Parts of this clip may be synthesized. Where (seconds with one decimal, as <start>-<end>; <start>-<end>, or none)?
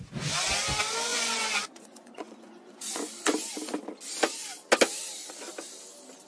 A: 1.1-3.1